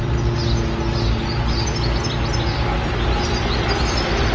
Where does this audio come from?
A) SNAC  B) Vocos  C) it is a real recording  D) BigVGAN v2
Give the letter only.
C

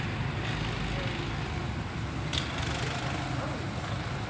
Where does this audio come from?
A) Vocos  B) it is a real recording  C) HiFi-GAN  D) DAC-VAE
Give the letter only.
B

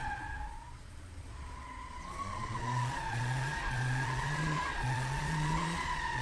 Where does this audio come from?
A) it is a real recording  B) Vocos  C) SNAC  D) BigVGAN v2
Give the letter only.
B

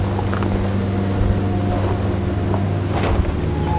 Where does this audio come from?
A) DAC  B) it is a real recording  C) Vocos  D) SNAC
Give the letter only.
B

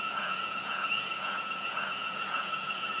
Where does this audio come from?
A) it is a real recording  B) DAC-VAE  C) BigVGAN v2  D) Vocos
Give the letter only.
D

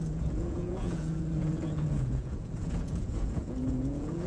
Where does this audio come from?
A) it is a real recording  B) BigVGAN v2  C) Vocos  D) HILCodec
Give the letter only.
C